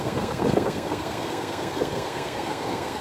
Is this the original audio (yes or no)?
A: no